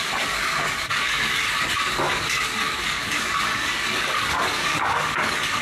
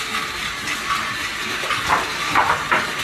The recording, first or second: second